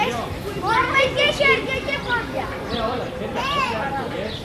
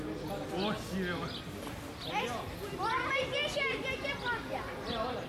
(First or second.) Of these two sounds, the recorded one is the second